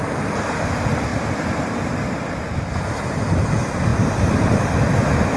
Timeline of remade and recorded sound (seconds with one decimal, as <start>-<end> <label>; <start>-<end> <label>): 0.0-1.1 recorded; 1.1-3.0 remade; 3.0-3.9 recorded; 3.9-4.6 remade; 4.6-5.4 recorded